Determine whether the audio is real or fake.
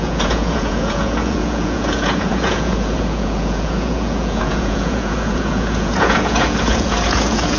fake